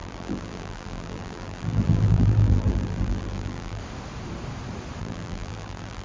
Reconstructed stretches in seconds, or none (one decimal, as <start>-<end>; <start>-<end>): 0.0-3.8; 5.0-6.0

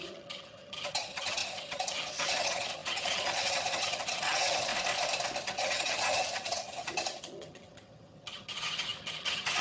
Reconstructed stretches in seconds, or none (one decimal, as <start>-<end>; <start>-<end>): 0.0-4.7; 5.4-9.6

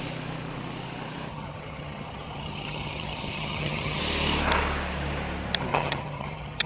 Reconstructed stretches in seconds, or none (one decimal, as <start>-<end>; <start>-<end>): 1.3-4.0; 5.7-6.7

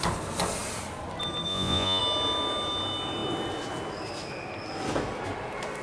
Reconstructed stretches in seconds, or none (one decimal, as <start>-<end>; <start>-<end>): 1.5-2.0

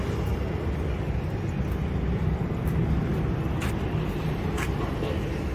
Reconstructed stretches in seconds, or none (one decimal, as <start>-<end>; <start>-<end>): none

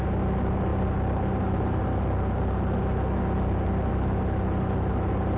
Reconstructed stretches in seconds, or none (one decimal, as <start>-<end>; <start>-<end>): none

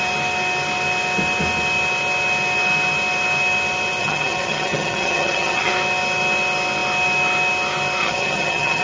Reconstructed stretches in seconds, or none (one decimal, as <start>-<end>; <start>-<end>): 4.0-5.7; 8.0-8.8

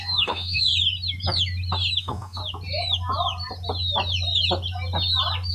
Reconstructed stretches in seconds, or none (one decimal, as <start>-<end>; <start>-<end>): 0.0-0.7; 2.0-2.4